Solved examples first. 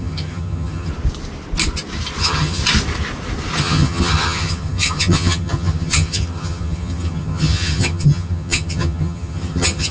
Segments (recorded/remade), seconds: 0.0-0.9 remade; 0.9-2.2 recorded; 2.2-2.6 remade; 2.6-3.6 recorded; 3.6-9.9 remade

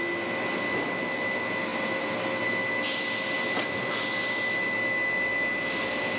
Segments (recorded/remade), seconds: 0.0-6.2 recorded

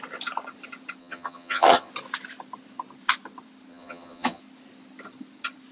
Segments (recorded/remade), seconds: 0.0-1.0 recorded; 1.0-1.9 remade; 1.9-3.7 recorded; 3.7-4.4 remade; 4.4-5.7 recorded

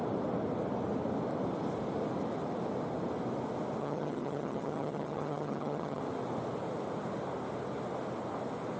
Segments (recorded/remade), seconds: 0.0-3.8 recorded; 3.8-6.0 remade; 6.0-8.8 recorded

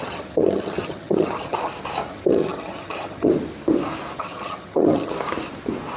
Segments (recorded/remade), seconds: 0.0-1.7 remade; 1.7-2.1 recorded; 2.1-3.3 remade; 3.3-4.2 recorded; 4.2-5.1 remade; 5.1-6.0 recorded